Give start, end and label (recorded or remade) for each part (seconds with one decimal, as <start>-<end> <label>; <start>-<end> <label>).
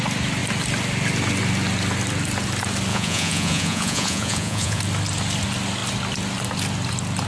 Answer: 0.0-2.9 recorded; 2.9-4.8 remade; 4.8-7.3 recorded